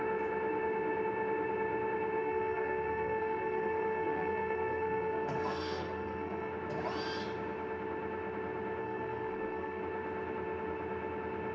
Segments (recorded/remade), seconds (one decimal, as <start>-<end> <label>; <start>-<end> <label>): 0.0-2.2 recorded; 2.2-6.5 remade; 6.5-8.8 recorded; 8.8-9.8 remade; 9.8-11.5 recorded